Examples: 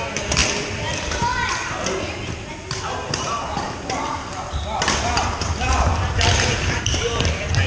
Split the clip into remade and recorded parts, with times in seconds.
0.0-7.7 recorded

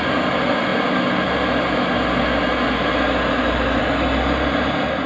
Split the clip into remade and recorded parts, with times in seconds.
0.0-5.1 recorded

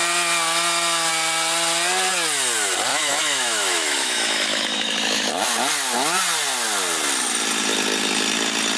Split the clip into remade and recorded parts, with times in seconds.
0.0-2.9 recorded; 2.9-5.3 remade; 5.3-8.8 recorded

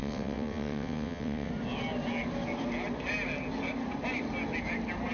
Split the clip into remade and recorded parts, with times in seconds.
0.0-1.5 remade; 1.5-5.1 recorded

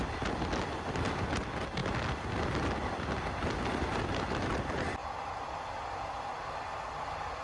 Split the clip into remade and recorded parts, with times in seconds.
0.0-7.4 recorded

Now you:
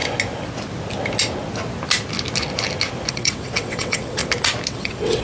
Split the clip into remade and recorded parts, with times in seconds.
0.0-3.1 recorded; 3.1-4.2 remade; 4.2-4.7 recorded; 4.7-5.2 remade

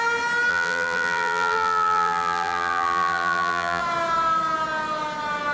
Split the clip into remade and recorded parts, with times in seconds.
0.0-0.5 recorded; 0.5-3.8 remade; 3.8-5.5 recorded

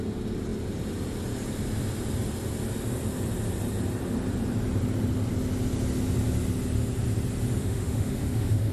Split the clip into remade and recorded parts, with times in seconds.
0.0-7.6 recorded; 7.6-8.7 remade